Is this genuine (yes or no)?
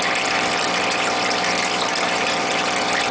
yes